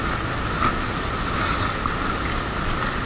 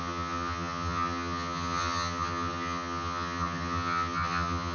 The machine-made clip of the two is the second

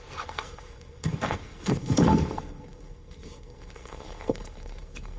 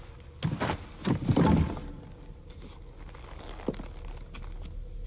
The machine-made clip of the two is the first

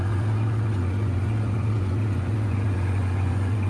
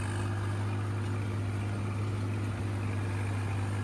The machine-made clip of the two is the first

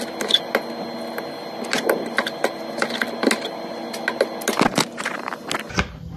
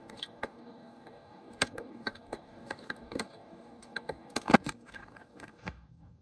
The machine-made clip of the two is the second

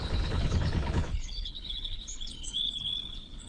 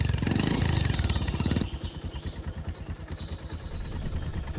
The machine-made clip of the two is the first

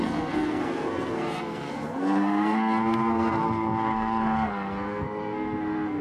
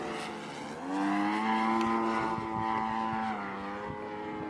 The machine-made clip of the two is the first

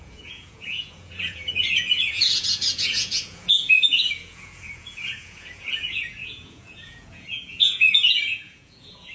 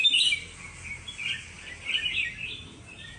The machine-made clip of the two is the first